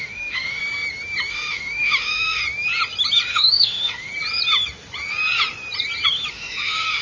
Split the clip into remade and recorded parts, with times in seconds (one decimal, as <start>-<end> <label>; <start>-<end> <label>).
0.0-0.6 remade; 0.6-1.3 recorded; 1.3-2.4 remade; 2.4-3.3 recorded; 3.3-4.1 remade; 4.1-6.3 recorded; 6.3-7.0 remade